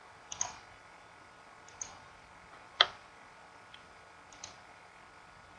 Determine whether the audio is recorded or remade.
recorded